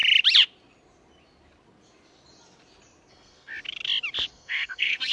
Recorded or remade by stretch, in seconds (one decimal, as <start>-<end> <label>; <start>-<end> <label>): 0.0-3.1 recorded; 3.1-3.5 remade; 3.5-4.3 recorded; 4.3-5.1 remade